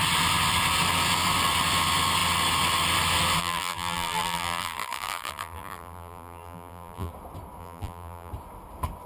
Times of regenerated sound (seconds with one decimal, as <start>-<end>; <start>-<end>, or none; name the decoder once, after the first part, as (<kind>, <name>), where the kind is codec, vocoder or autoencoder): 3.4-7.1 (vocoder, BigVGAN v2); 7.6-8.3